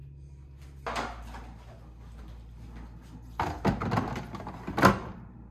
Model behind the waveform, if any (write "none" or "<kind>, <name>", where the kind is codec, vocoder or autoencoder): none